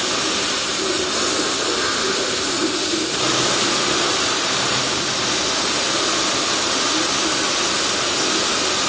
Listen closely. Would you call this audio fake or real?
real